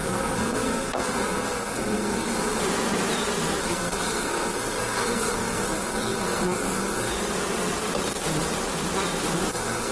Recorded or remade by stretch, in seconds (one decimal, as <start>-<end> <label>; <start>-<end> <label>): 0.0-2.6 remade; 2.6-3.6 recorded; 3.6-7.1 remade; 7.1-9.5 recorded; 9.5-9.9 remade